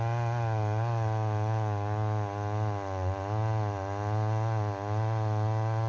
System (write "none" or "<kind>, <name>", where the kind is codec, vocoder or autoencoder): none